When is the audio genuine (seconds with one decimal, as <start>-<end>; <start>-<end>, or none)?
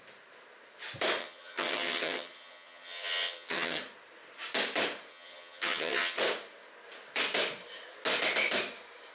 0.0-1.2; 3.8-5.1; 6.2-9.1